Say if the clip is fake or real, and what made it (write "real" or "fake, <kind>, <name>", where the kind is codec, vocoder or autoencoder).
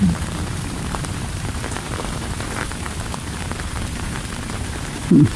fake, vocoder, BigVGAN v2